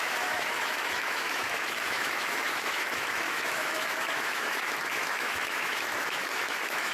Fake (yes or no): yes